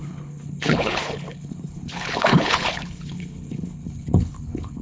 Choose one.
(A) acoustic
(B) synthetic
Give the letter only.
B